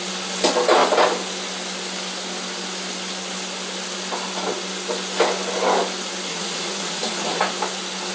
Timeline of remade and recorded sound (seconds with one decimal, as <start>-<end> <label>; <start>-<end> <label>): 0.0-6.3 recorded; 6.3-7.4 remade; 7.4-8.1 recorded